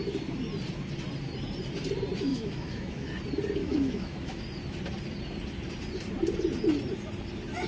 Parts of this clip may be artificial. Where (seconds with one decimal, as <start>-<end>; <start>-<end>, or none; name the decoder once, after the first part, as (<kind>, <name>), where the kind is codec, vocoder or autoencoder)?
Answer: 2.3-3.1 (autoencoder, DAC-VAE); 3.6-4.4